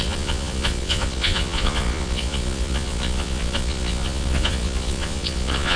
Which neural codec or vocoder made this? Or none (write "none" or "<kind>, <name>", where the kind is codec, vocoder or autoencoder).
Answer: vocoder, Vocos